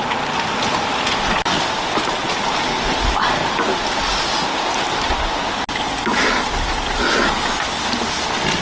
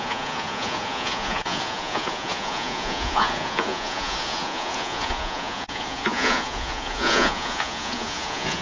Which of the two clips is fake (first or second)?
second